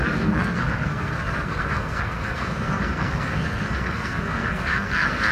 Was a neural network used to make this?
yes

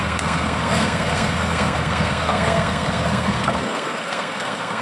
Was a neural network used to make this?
yes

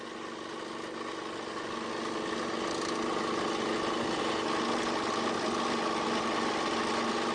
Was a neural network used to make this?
no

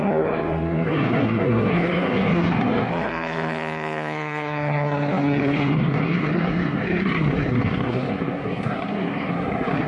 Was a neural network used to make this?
yes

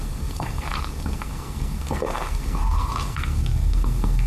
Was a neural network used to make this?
yes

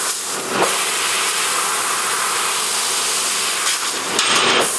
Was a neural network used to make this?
no